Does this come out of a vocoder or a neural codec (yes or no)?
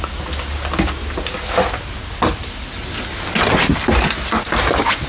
no